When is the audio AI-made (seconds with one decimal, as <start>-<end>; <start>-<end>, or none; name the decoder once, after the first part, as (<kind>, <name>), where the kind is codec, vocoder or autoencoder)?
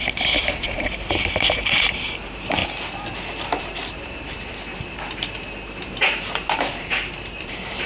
0.0-2.6 (vocoder, BigVGAN v2); 3.6-7.9